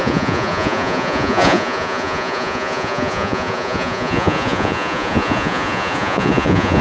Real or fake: fake